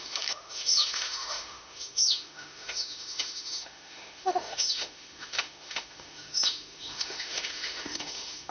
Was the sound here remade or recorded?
remade